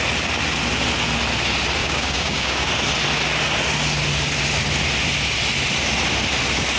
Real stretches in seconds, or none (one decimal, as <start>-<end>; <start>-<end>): 0.0-1.8; 2.7-6.8